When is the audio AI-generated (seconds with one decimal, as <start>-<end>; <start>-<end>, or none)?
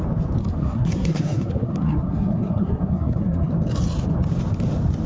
0.4-3.5